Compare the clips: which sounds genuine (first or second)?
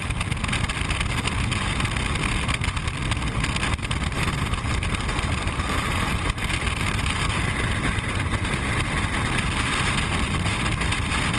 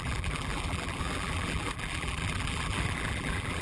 first